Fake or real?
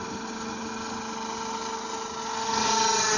real